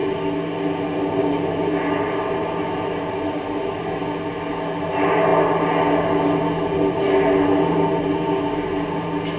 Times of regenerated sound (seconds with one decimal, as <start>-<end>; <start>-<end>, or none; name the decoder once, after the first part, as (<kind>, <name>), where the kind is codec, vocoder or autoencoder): none